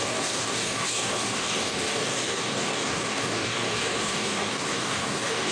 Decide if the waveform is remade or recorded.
remade